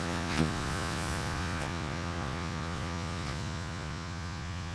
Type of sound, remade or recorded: remade